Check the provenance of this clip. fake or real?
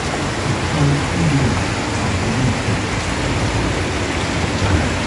real